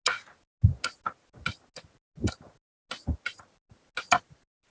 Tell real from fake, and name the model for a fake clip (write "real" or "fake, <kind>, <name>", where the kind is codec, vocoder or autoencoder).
real